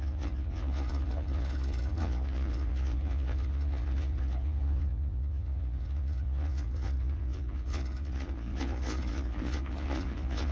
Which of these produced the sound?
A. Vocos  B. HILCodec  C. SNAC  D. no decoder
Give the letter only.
A